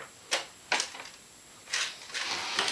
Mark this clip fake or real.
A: real